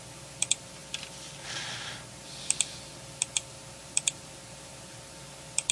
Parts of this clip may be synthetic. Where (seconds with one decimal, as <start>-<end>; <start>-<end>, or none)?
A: none